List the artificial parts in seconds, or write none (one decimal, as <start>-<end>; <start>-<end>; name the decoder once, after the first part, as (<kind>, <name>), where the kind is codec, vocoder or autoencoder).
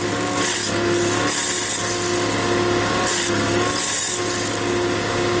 none